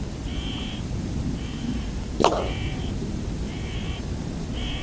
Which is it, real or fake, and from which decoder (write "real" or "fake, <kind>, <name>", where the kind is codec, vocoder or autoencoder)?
real